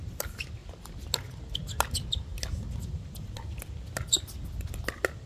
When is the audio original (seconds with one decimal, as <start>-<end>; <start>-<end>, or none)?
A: 0.0-5.3